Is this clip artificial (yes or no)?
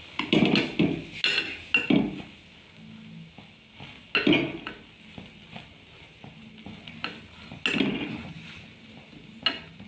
no